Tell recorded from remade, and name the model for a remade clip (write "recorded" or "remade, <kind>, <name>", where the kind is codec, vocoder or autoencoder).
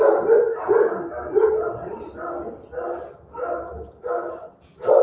recorded